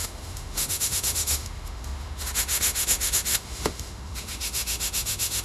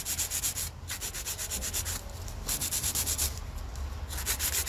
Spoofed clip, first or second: first